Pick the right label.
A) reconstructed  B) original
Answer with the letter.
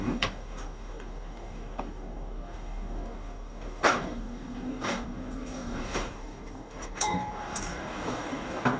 A